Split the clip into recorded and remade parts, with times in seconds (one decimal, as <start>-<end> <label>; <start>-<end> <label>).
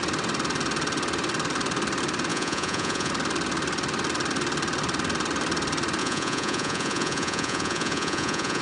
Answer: 0.0-2.3 recorded; 2.3-3.1 remade; 3.1-6.0 recorded; 6.0-8.6 remade